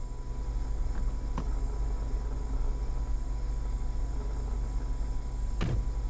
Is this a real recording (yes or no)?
yes